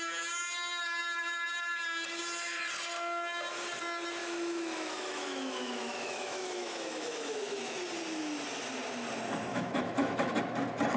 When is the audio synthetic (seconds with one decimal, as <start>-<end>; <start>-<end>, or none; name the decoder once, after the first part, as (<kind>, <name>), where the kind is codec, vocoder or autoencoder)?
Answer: 4.2-7.8 (autoencoder, DAC-VAE); 9.5-10.3